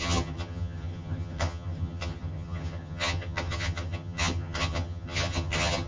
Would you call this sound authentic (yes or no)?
no